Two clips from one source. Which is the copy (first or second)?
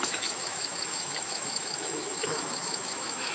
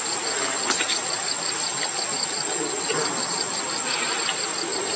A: first